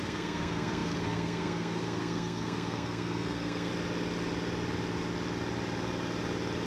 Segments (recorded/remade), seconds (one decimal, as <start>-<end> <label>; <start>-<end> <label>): 0.0-3.7 remade; 3.7-6.7 recorded